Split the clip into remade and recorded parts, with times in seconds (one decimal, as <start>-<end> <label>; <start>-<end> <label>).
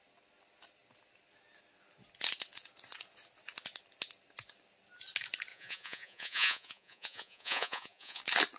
0.0-5.5 recorded; 5.5-8.2 remade; 8.2-8.6 recorded